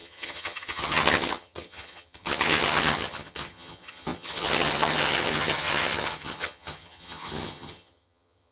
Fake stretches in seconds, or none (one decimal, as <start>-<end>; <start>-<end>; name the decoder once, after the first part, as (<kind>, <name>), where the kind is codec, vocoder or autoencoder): 0.0-8.5 (vocoder, HiFi-GAN)